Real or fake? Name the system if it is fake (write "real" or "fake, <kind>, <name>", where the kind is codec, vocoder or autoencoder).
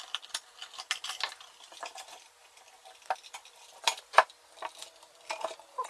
real